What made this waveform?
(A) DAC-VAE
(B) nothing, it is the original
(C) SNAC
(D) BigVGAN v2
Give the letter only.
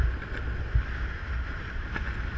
B